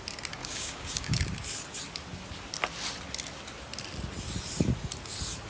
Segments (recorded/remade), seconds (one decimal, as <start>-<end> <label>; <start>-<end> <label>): 0.0-0.4 recorded; 0.4-1.2 remade; 1.2-5.5 recorded